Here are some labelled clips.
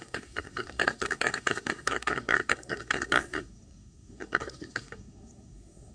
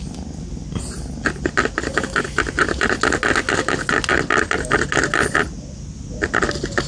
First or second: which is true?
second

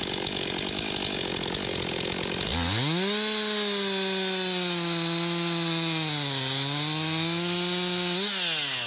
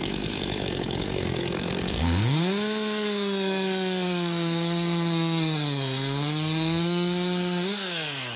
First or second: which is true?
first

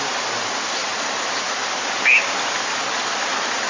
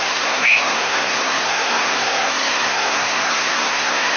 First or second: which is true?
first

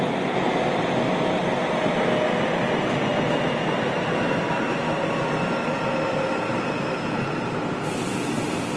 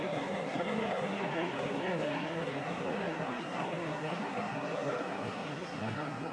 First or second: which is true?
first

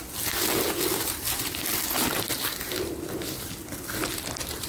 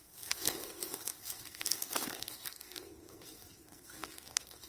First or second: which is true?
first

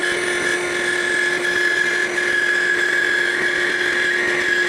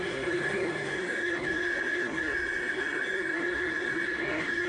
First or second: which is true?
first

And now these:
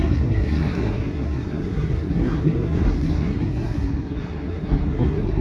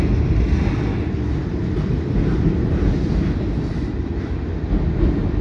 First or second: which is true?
second